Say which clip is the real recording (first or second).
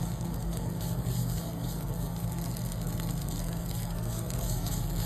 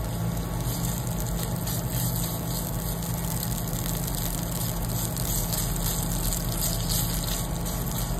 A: second